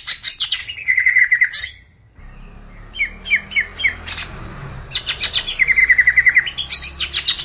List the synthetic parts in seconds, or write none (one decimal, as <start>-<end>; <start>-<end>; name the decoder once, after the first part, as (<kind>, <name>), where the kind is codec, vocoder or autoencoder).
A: 0.6-1.2 (vocoder, HiFi-GAN); 1.6-2.2